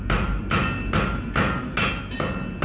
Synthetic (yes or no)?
no